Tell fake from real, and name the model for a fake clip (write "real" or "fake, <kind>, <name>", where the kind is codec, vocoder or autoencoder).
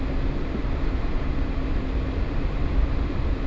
real